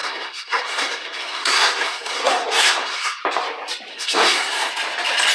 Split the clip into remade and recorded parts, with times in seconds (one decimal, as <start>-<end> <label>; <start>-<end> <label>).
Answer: 0.0-3.2 remade; 3.2-3.9 recorded; 3.9-4.7 remade; 4.7-5.3 recorded